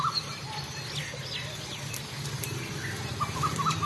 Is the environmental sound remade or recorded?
recorded